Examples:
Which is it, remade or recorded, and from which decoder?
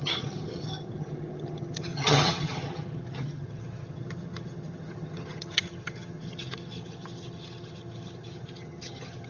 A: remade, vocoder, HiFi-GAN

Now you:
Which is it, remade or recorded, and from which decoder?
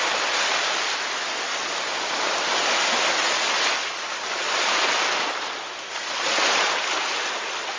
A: recorded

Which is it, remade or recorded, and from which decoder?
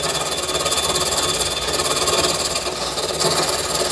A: recorded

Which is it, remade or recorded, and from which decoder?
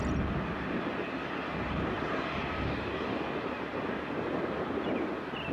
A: recorded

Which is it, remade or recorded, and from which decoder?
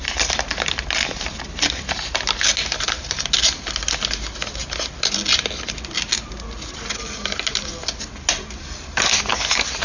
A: recorded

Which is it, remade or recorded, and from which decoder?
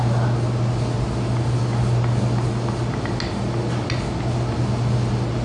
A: recorded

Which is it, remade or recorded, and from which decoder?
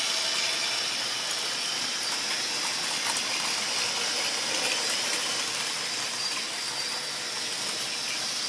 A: recorded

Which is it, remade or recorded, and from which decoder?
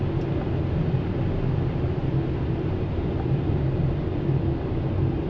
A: recorded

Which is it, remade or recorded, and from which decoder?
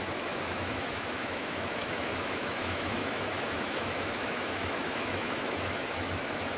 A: remade, autoencoder, DAC-VAE